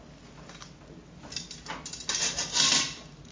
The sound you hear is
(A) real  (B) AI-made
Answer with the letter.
A